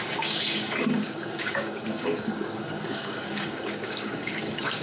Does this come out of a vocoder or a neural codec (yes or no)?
yes